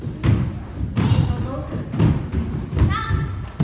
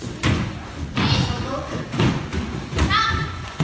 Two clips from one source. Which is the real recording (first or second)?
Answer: first